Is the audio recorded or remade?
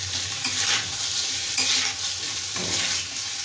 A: remade